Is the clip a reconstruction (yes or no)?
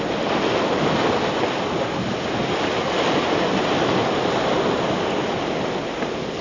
no